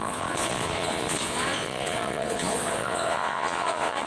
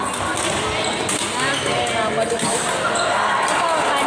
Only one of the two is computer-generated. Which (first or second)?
first